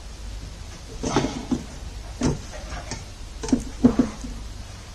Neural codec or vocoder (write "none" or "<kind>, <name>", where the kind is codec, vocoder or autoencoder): none